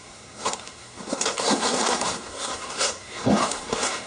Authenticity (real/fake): fake